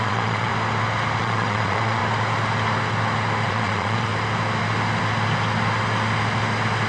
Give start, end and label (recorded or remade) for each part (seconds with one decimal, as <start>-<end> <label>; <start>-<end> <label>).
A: 0.0-0.5 remade; 0.5-1.2 recorded; 1.2-2.0 remade; 2.0-3.5 recorded; 3.5-4.1 remade; 4.1-6.9 recorded